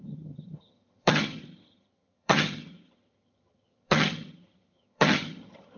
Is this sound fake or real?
fake